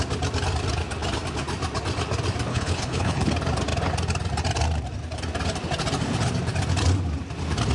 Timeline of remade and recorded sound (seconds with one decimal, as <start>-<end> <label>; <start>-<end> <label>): 0.0-2.5 recorded; 2.5-3.3 remade; 3.3-7.7 recorded